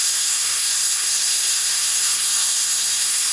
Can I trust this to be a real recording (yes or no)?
no